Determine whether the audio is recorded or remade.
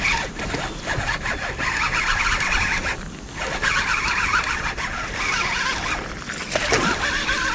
recorded